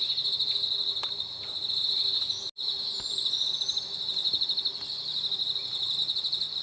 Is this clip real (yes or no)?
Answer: yes